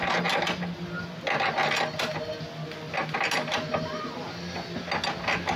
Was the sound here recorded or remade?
recorded